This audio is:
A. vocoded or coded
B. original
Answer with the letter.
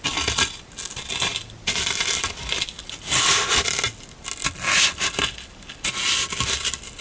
B